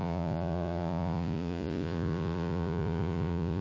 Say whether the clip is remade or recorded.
remade